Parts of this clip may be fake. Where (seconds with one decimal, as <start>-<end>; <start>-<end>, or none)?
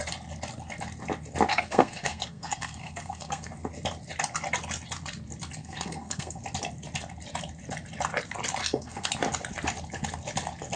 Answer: 1.5-3.5; 5.6-6.4; 8.6-9.1